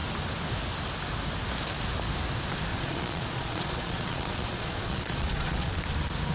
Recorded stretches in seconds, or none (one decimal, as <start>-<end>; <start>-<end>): 0.0-2.7; 5.8-6.3